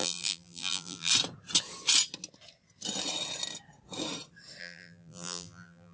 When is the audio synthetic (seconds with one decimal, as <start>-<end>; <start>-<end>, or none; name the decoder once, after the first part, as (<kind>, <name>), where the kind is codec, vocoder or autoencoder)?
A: 0.0-1.1 (vocoder, BigVGAN v2); 4.6-5.9